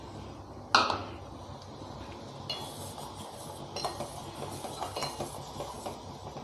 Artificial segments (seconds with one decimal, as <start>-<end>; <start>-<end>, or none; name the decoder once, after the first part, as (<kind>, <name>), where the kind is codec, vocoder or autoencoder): none

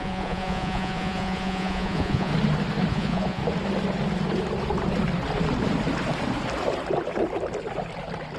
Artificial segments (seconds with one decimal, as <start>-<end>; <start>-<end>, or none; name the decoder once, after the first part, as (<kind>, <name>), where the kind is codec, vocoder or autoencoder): 0.0-2.3 (vocoder, Vocos); 2.9-3.4

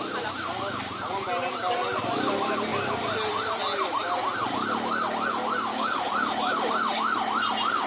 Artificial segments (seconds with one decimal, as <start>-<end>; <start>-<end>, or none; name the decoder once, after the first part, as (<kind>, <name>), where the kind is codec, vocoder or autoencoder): 5.7-6.7 (vocoder, BigVGAN v2)

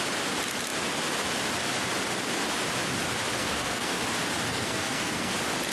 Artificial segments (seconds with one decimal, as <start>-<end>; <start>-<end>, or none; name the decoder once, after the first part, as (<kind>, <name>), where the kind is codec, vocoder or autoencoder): 3.4-4.0 (codec, SNAC); 4.5-5.3

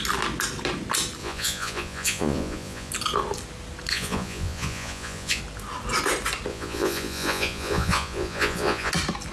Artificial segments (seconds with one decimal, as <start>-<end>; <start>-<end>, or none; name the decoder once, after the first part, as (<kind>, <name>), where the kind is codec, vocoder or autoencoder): 1.2-2.9 (vocoder, Vocos); 3.9-5.4; 6.5-8.9

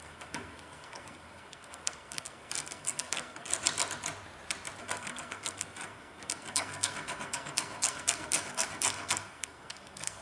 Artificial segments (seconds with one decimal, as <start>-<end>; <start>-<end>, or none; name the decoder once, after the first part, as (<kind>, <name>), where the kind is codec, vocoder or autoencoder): 0.0-3.5 (codec, SNAC); 4.8-10.2

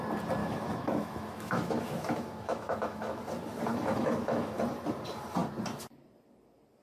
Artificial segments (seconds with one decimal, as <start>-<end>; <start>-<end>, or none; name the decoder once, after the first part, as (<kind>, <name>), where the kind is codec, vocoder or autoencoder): 0.4-3.2 (autoencoder, DAC-VAE); 3.7-4.6